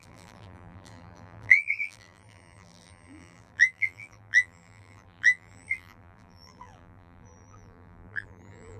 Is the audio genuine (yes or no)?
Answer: no